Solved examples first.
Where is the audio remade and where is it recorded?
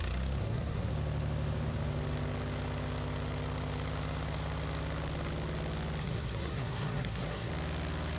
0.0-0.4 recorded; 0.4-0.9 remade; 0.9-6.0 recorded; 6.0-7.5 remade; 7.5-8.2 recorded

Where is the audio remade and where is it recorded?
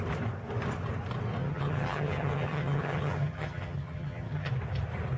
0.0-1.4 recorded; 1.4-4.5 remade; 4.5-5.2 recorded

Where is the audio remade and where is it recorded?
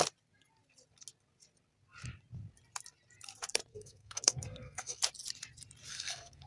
0.0-3.7 recorded; 3.7-5.0 remade; 5.0-5.9 recorded; 5.9-6.5 remade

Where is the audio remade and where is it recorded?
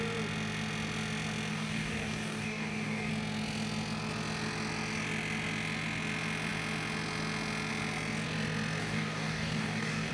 0.0-1.5 recorded; 1.5-3.1 remade; 3.1-8.8 recorded; 8.8-10.1 remade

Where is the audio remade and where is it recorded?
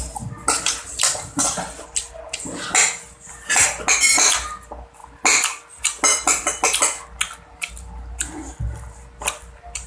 0.0-9.9 recorded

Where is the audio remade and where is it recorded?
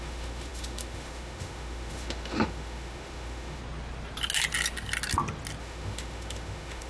0.0-3.6 remade; 3.6-5.6 recorded; 5.6-6.9 remade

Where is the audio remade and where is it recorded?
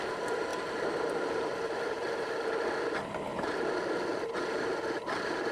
0.0-5.5 recorded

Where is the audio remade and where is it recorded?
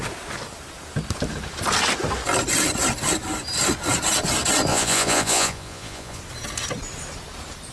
0.0-4.7 recorded; 4.7-6.2 remade; 6.2-7.7 recorded